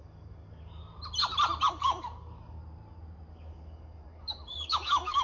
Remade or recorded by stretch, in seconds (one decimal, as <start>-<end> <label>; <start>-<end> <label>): 0.0-0.8 remade; 0.8-1.7 recorded; 1.7-2.6 remade; 2.6-3.3 recorded; 3.3-5.2 remade

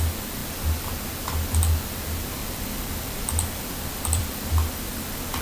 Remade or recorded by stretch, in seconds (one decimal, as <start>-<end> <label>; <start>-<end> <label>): 0.0-0.4 recorded; 0.4-0.9 remade; 0.9-2.4 recorded; 2.4-5.4 remade

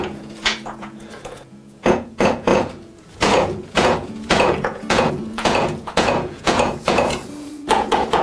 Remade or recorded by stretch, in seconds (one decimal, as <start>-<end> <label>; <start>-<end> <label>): 0.0-8.2 remade

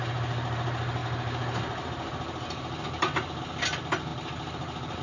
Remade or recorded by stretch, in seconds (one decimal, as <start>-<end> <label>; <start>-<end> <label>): 0.0-5.0 recorded

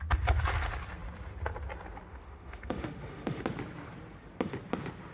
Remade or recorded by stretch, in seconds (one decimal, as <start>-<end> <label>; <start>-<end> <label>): 0.0-2.1 recorded; 2.1-3.4 remade; 3.4-5.1 recorded

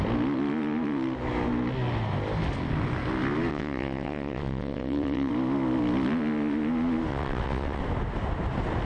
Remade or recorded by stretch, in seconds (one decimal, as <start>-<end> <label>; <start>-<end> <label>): 0.0-3.5 recorded; 3.5-5.3 remade; 5.3-7.1 recorded; 7.1-7.8 remade; 7.8-8.9 recorded

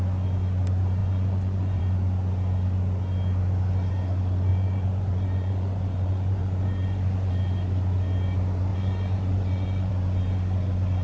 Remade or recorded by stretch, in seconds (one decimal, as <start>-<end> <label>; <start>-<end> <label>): 0.0-1.0 recorded; 1.0-1.8 remade; 1.8-4.5 recorded; 4.5-7.3 remade; 7.3-8.7 recorded; 8.7-9.9 remade; 9.9-11.0 recorded